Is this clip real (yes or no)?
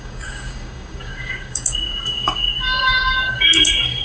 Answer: no